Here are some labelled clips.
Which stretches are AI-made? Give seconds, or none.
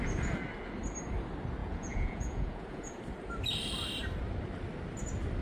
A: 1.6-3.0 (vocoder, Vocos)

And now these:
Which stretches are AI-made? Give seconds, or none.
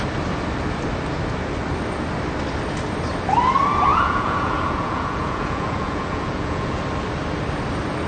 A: 3.9-6.7 (vocoder, Vocos)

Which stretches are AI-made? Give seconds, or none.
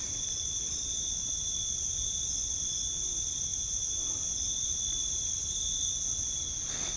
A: none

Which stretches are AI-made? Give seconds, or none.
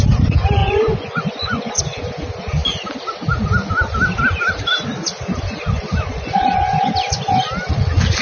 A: 0.6-1.8 (vocoder, Vocos); 6.1-6.9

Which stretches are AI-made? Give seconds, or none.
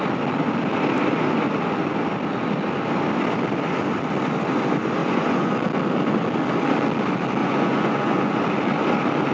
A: 5.0-5.5 (vocoder, Vocos); 7.4-8.4